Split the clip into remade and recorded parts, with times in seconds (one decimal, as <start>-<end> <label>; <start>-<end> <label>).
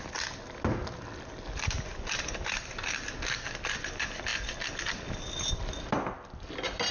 0.0-6.9 recorded